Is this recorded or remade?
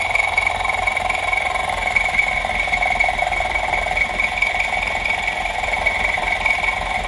remade